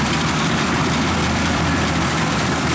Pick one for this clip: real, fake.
fake